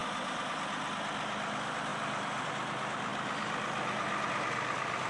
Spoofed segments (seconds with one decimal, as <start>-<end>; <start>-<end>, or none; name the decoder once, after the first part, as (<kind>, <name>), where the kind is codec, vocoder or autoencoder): 0.0-0.7 (vocoder, BigVGAN v2); 1.9-2.5; 3.1-5.1